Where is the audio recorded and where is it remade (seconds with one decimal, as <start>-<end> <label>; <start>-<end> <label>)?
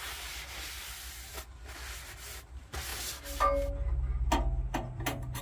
0.0-5.4 recorded